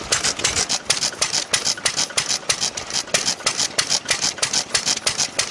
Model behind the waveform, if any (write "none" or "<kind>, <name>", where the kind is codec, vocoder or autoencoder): none